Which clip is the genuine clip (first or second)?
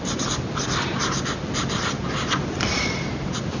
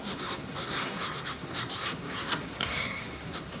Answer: first